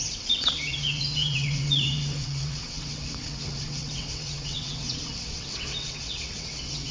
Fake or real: fake